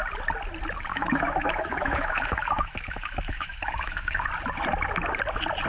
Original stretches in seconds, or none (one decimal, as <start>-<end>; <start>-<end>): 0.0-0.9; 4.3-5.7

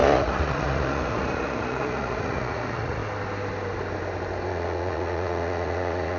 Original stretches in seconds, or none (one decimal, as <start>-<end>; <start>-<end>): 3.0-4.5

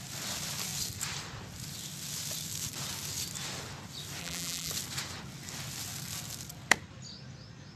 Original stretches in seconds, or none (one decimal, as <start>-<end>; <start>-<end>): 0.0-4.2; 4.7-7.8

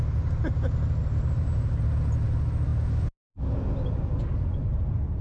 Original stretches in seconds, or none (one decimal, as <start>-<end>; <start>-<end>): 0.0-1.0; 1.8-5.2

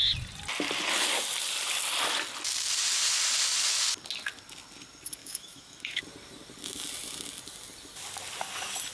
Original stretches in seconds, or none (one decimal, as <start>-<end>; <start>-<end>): 0.0-5.2; 6.0-8.9